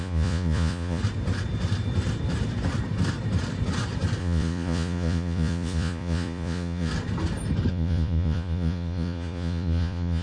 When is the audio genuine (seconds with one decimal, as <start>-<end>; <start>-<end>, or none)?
1.0-4.2; 6.9-7.7